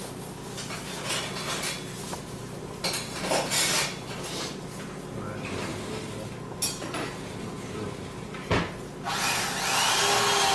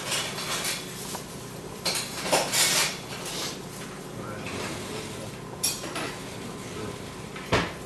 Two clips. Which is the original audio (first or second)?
first